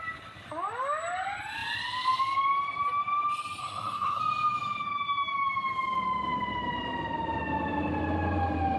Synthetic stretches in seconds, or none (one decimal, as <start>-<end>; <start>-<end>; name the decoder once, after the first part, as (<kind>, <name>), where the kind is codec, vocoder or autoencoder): 3.6-4.2 (codec, SNAC)